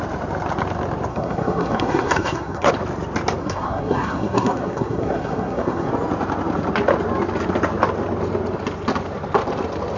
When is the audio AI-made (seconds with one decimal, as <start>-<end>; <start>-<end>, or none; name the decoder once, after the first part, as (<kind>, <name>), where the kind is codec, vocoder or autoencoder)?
1.1-2.7 (codec, SNAC); 3.4-5.9